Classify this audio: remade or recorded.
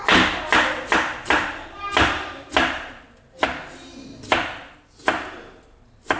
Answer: recorded